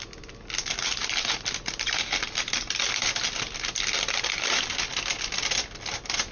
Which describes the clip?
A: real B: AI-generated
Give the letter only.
A